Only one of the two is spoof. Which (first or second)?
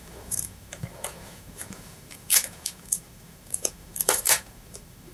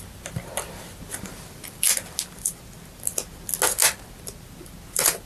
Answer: first